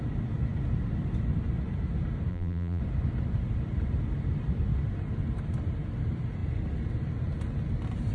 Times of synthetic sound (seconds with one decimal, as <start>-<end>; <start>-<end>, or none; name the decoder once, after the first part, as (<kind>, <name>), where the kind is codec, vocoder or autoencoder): 2.3-2.8 (vocoder, BigVGAN v2)